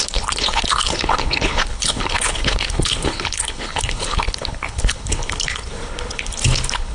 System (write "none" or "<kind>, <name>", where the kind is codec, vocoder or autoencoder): codec, HILCodec